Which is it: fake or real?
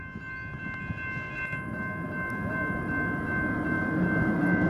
real